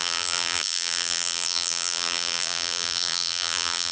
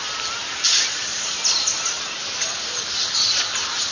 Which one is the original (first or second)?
second